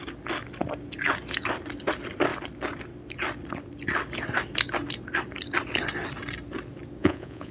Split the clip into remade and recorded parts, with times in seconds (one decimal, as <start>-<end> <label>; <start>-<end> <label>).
0.0-7.0 recorded; 7.0-7.5 remade